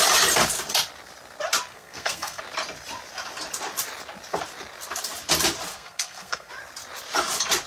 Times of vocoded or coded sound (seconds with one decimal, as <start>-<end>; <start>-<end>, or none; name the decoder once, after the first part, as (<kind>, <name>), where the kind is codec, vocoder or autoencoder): 1.7-2.4 (codec, SNAC); 5.7-6.5